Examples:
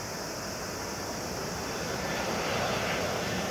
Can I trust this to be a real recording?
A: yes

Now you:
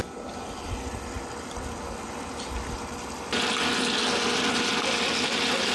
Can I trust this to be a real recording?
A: yes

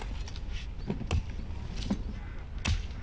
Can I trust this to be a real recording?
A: yes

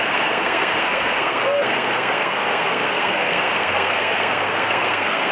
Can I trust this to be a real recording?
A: no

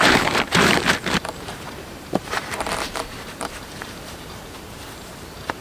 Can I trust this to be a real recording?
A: no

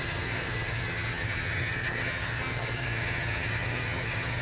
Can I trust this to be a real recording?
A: no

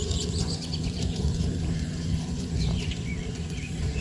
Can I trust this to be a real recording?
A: no